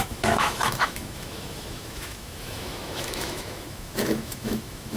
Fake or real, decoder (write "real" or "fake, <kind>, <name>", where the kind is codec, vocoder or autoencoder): fake, autoencoder, DAC-VAE